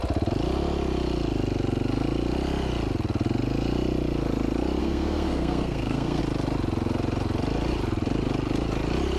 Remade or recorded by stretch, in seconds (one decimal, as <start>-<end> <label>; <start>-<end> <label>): 0.0-4.8 recorded; 4.8-6.2 remade; 6.2-9.2 recorded